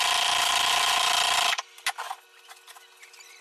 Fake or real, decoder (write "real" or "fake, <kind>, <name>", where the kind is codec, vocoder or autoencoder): real